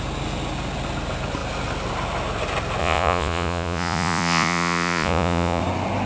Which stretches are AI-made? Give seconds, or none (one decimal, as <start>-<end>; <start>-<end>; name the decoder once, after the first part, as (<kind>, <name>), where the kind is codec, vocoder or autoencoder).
2.8-5.6 (vocoder, Vocos)